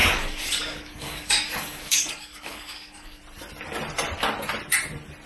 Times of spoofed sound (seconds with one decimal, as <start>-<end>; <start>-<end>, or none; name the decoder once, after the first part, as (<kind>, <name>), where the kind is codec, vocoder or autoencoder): 0.0-3.2 (codec, DAC)